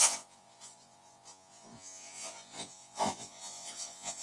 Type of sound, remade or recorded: remade